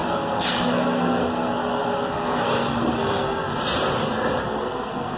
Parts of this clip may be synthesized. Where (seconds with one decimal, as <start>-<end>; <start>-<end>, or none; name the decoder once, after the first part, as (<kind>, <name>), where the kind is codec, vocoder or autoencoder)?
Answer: 0.0-3.5 (codec, SNAC); 4.4-5.2